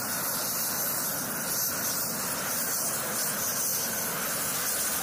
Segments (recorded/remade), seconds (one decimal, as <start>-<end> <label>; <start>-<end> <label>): 0.0-1.1 remade; 1.1-2.0 recorded; 2.0-5.0 remade